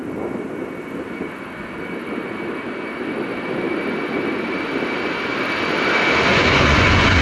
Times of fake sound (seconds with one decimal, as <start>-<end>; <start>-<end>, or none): 6.3-7.2